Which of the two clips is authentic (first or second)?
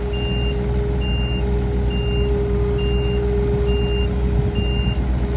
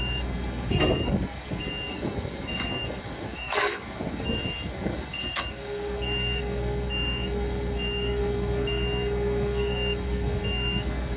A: first